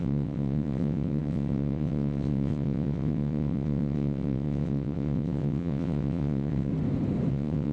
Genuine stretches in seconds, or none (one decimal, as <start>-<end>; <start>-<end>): 6.7-7.3